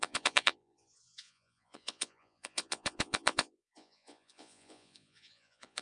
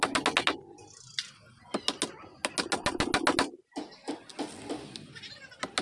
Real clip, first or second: second